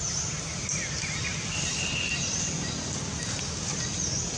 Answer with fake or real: real